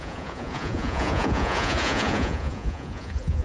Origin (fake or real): fake